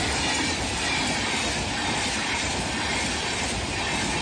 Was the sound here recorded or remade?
recorded